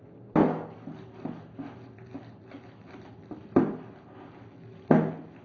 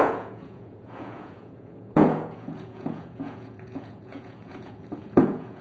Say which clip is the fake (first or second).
second